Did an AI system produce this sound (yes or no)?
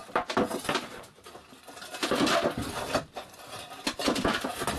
no